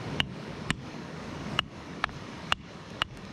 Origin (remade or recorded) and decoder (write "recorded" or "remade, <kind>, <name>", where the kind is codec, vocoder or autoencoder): remade, codec, DAC